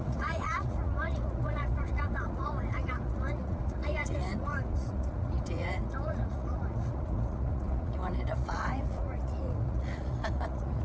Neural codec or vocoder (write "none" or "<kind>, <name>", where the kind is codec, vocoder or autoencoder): vocoder, Vocos